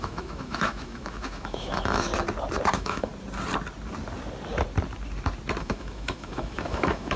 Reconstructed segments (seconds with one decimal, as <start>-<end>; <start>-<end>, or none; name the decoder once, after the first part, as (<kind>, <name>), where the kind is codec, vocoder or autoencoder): 0.0-2.1 (autoencoder, DAC-VAE); 2.7-3.1; 5.6-7.2

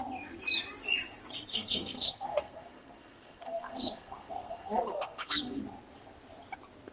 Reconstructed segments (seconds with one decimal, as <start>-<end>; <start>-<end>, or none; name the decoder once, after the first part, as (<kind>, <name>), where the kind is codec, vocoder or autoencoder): 1.5-5.6 (codec, SNAC)

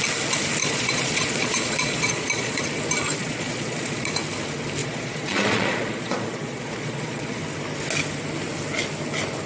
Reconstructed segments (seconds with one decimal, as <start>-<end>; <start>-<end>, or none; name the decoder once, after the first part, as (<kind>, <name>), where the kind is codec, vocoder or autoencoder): 0.6-2.6 (vocoder, Vocos); 3.2-4.1; 4.8-7.4

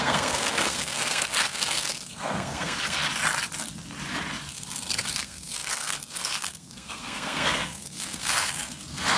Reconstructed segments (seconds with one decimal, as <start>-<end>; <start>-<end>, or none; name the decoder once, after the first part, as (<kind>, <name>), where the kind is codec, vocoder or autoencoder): 0.0-3.0 (codec, SNAC); 4.5-9.2

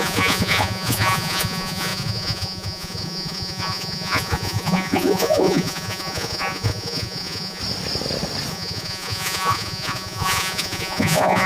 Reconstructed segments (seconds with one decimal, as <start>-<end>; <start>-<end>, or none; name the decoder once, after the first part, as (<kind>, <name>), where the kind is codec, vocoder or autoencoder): 0.0-7.6 (vocoder, Vocos); 8.5-11.5

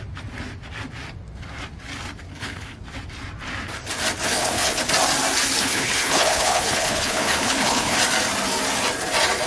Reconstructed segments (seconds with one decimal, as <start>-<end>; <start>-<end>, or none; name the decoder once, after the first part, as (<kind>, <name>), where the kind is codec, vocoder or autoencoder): 2.3-2.8 (codec, HILCodec); 4.3-4.8; 5.6-8.0

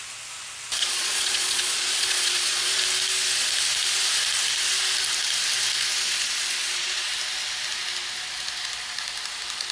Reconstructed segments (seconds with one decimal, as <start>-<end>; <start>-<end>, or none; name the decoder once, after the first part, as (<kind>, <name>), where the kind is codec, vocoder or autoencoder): 0.8-2.8 (vocoder, Vocos); 6.6-7.1

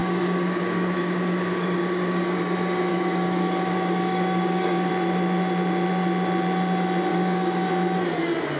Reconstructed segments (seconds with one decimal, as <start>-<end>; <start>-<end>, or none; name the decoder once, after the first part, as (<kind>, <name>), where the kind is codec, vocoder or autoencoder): 0.0-2.4 (codec, DAC); 2.9-4.9; 7.1-7.7